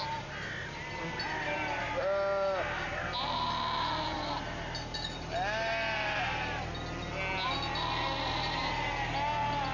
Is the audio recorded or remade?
recorded